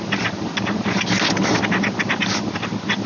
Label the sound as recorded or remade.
recorded